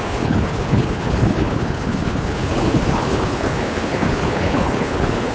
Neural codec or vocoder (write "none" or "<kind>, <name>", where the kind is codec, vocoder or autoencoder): codec, HILCodec